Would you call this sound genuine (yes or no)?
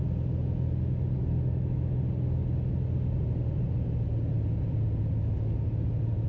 yes